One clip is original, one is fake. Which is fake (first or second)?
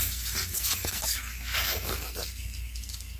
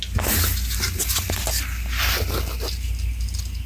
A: first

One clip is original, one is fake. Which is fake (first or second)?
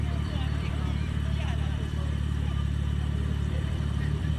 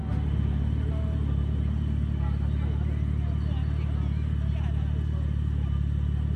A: first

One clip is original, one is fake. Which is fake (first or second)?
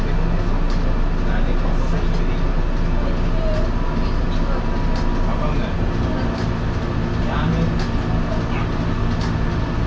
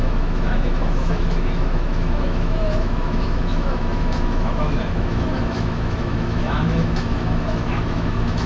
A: second